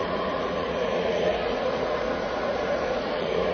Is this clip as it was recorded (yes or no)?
no